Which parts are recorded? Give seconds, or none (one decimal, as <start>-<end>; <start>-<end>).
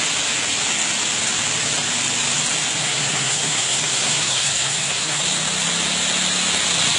0.0-2.8; 5.2-7.0